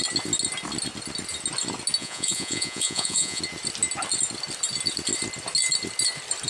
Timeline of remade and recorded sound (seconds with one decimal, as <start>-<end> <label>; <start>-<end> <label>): 0.0-2.0 recorded; 2.0-3.4 remade; 3.4-6.5 recorded